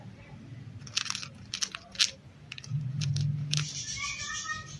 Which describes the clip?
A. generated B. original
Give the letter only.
A